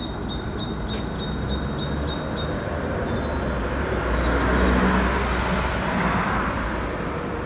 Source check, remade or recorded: recorded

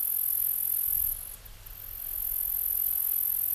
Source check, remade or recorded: recorded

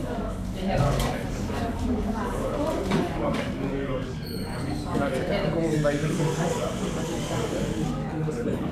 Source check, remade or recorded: remade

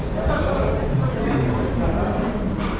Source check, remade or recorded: remade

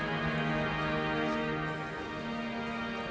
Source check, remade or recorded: recorded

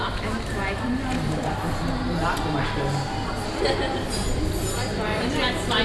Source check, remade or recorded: recorded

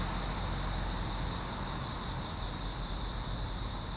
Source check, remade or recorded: recorded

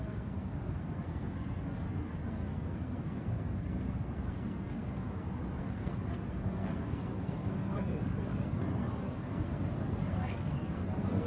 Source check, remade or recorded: remade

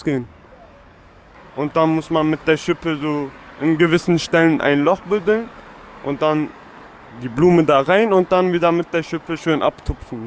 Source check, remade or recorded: remade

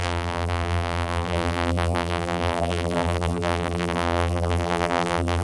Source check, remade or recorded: remade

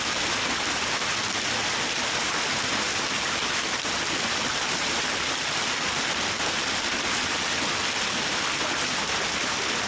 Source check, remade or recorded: recorded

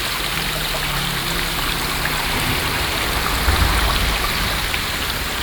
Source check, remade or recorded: recorded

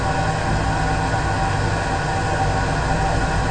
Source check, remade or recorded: recorded